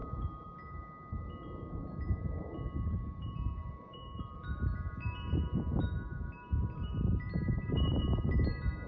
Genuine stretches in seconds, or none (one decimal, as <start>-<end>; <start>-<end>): none